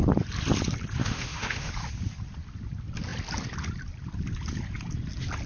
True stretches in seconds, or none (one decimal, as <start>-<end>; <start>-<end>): 0.0-1.0; 1.7-5.5